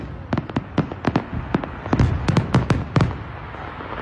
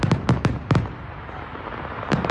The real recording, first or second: first